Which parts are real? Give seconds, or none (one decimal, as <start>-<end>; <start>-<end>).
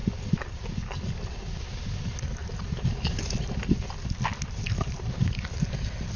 0.0-6.2